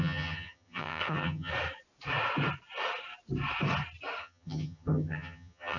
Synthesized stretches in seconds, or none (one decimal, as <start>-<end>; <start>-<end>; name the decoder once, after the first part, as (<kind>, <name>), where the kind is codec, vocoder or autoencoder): 0.0-1.5 (vocoder, HiFi-GAN); 4.2-5.8